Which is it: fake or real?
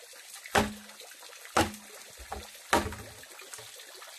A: real